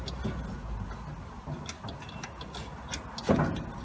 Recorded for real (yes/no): yes